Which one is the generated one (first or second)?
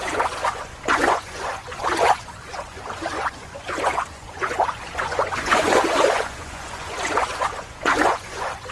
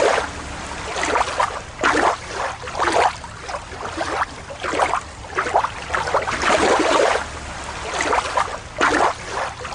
first